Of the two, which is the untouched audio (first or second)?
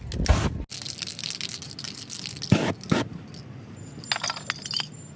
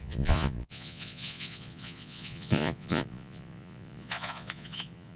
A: first